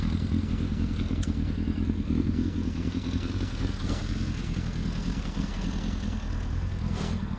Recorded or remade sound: remade